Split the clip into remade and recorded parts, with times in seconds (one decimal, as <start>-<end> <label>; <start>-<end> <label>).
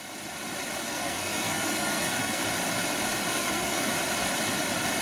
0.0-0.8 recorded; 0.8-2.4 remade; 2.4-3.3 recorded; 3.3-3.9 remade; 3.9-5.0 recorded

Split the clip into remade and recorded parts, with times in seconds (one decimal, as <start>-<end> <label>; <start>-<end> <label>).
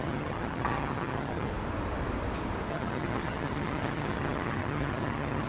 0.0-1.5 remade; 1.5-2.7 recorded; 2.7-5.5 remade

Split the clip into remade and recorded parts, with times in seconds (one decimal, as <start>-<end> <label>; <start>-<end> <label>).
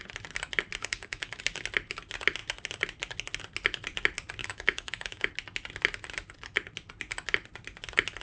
0.0-0.8 recorded; 0.8-1.4 remade; 1.4-4.4 recorded; 4.4-5.3 remade; 5.3-8.2 recorded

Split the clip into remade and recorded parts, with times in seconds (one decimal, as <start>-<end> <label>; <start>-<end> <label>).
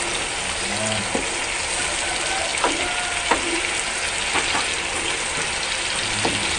0.0-6.6 recorded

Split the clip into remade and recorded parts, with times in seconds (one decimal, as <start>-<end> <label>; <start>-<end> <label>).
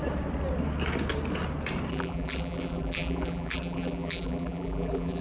0.0-1.9 recorded; 1.9-5.2 remade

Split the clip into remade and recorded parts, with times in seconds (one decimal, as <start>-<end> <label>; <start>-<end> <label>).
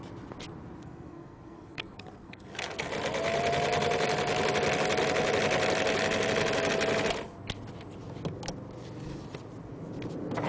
0.0-0.8 recorded; 0.8-2.9 remade; 2.9-10.5 recorded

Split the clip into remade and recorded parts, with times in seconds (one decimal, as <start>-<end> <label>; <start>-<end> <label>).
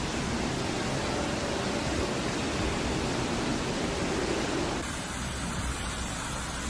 0.0-2.4 recorded; 2.4-5.3 remade; 5.3-6.7 recorded